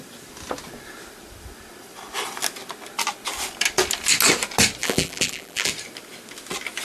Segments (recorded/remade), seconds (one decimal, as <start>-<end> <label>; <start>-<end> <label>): 0.0-4.8 recorded; 4.8-5.7 remade; 5.7-6.8 recorded